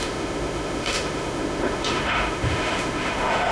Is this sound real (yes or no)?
no